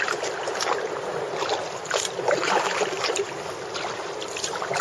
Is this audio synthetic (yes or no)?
yes